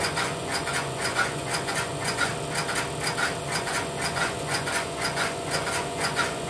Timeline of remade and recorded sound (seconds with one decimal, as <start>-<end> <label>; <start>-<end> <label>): 0.0-2.3 remade; 2.3-3.4 recorded; 3.4-6.5 remade